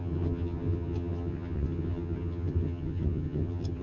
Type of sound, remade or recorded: remade